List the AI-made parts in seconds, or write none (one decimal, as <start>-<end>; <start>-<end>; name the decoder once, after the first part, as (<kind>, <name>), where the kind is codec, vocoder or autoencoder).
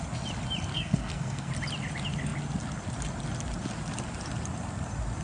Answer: 0.7-1.5 (codec, SNAC)